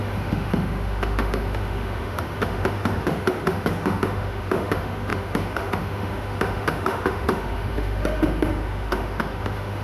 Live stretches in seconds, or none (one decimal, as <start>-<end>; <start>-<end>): none